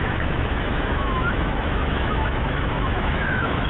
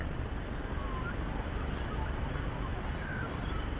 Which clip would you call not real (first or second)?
first